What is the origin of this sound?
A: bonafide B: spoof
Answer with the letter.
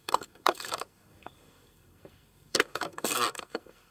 B